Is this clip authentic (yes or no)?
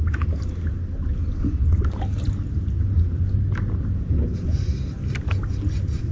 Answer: yes